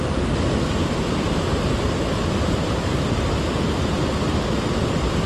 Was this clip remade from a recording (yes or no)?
no